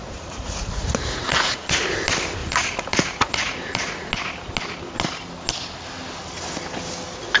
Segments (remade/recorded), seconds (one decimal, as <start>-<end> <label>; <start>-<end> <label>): 0.0-1.8 remade; 1.8-2.4 recorded; 2.4-4.1 remade; 4.1-7.4 recorded